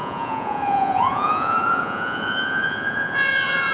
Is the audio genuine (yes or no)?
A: no